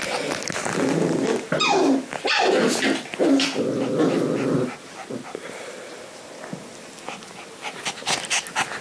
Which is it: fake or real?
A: real